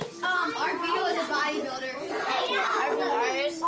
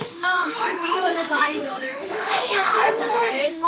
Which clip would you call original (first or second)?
first